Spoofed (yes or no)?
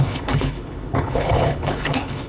yes